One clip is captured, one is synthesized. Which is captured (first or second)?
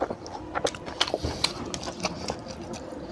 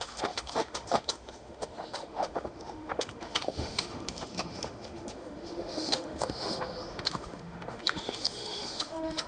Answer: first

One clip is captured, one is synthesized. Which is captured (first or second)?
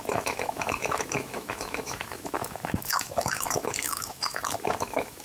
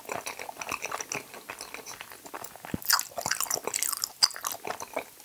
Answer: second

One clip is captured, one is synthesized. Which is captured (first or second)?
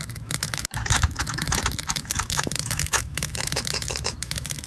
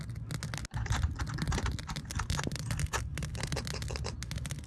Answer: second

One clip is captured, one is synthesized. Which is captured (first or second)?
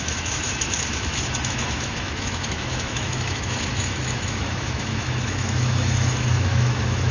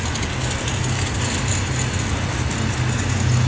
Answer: second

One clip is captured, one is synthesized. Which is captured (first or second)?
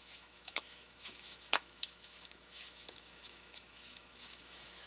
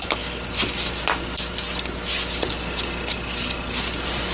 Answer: second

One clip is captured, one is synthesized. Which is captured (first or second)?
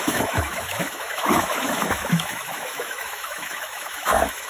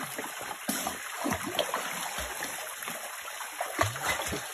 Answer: second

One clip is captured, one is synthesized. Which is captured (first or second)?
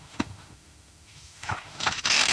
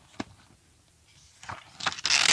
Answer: second